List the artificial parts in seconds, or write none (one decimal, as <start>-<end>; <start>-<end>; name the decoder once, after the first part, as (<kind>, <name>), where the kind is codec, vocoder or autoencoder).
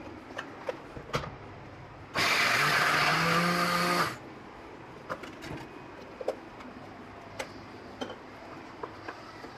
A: none